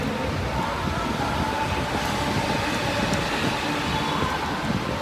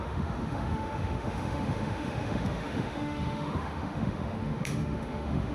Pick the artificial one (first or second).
second